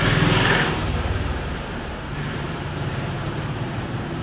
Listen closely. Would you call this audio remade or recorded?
remade